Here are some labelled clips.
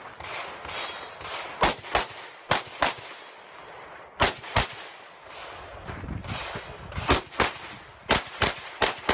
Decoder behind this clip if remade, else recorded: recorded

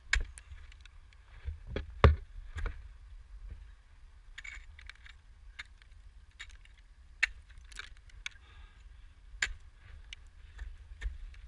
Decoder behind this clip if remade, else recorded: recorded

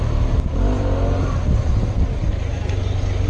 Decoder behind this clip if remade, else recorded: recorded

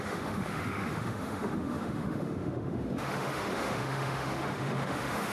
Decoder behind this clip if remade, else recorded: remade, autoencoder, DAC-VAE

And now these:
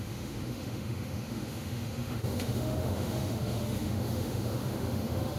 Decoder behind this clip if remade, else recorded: remade, autoencoder, DAC-VAE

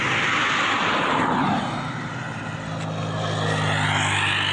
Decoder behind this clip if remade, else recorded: recorded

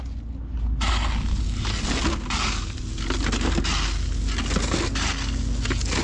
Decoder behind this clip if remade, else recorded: recorded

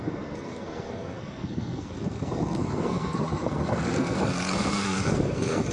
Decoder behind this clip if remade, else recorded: remade, codec, SNAC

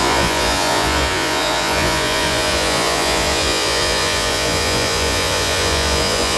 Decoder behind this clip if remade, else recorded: remade, vocoder, Vocos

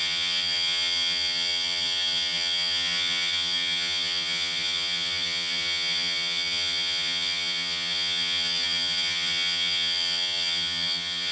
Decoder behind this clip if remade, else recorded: remade, vocoder, HiFi-GAN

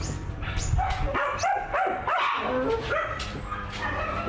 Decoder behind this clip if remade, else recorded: recorded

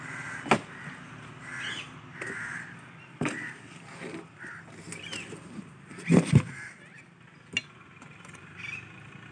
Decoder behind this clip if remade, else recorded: recorded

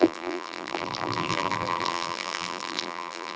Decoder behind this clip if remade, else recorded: remade, vocoder, BigVGAN v2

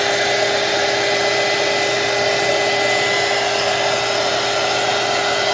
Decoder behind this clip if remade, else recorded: recorded